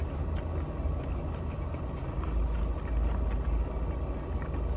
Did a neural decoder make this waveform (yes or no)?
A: no